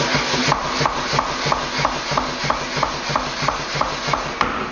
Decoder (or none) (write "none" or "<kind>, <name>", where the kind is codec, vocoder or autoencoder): none